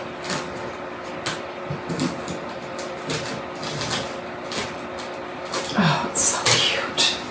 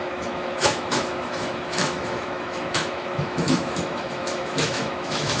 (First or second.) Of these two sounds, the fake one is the second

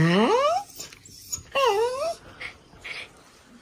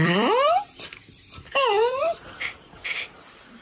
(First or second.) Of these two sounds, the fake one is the second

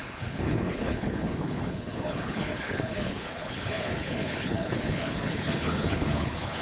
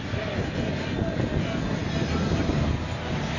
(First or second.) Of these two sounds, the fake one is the first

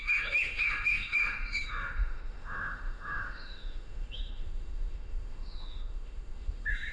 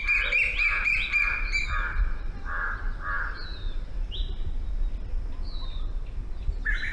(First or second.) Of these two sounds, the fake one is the first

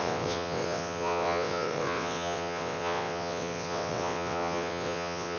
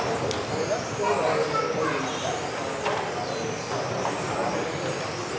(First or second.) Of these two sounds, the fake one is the first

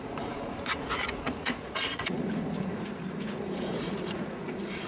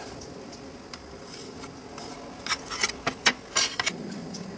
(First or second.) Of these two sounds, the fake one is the first